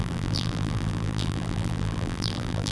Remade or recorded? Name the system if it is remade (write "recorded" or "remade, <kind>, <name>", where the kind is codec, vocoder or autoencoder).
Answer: remade, vocoder, BigVGAN v2